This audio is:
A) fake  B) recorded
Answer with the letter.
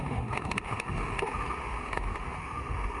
A